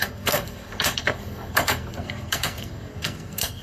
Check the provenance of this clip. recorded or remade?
remade